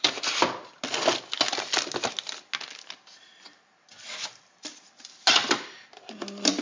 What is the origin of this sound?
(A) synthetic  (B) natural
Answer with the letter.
B